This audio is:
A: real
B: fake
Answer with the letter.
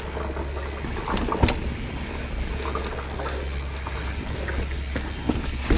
A